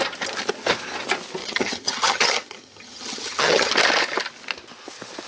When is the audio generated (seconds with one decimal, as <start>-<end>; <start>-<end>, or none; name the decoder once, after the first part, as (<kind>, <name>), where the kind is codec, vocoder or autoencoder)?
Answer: 1.4-3.7 (vocoder, HiFi-GAN)